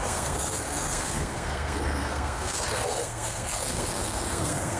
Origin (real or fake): fake